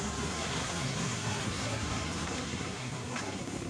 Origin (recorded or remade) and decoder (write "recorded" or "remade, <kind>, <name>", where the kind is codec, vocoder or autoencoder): remade, codec, SNAC